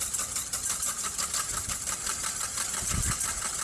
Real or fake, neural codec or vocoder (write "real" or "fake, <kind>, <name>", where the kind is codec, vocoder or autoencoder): real